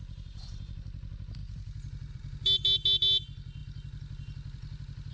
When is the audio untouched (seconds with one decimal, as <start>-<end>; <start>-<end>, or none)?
0.0-5.1